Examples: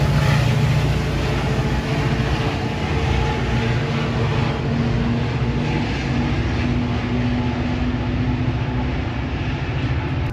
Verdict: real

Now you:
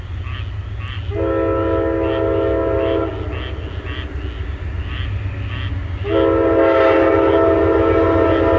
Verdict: real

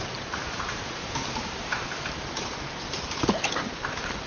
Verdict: fake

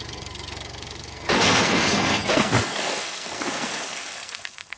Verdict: fake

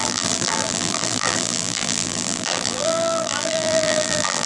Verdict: fake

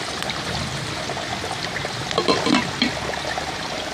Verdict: real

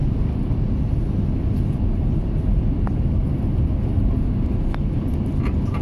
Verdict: real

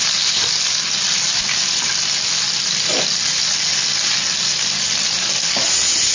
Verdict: real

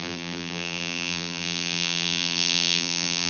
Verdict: fake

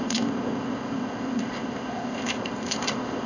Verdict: fake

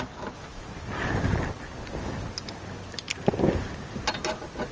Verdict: real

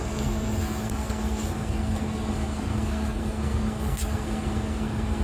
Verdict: fake